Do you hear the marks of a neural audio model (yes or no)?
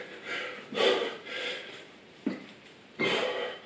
yes